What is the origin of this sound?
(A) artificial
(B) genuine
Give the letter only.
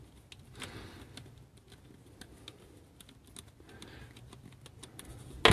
B